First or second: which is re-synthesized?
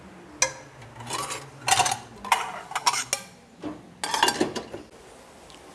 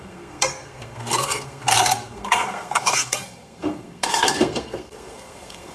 second